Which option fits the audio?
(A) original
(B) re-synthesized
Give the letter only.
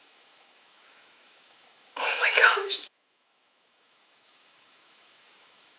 B